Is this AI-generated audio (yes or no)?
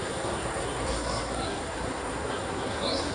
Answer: yes